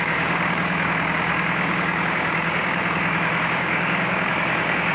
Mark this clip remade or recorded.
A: remade